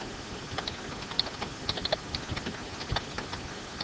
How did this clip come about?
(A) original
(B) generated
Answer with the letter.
A